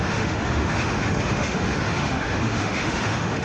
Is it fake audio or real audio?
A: fake